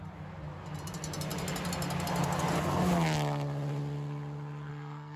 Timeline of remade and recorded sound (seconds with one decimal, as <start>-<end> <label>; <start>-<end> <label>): 0.0-4.7 recorded; 4.7-5.2 remade